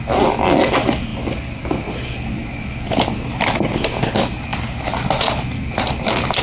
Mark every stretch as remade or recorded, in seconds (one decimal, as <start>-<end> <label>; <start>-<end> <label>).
0.0-6.4 recorded